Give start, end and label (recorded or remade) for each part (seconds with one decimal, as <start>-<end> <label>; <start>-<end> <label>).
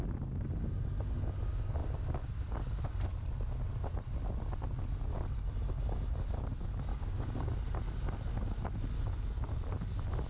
0.0-6.9 recorded; 6.9-7.5 remade; 7.5-10.3 recorded